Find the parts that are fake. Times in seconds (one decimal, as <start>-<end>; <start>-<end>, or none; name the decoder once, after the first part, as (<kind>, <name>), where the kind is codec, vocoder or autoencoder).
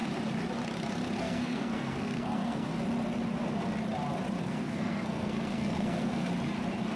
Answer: 1.2-2.7 (codec, SNAC); 4.4-6.3